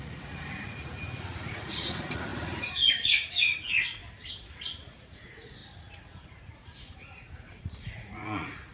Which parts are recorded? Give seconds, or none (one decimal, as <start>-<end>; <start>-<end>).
4.0-4.5